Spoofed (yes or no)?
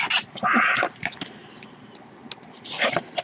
no